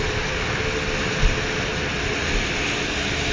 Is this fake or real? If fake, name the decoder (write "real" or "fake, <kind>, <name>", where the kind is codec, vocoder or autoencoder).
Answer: real